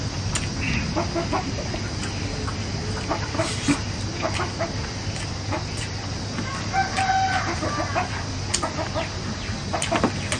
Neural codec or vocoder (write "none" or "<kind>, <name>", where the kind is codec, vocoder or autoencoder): none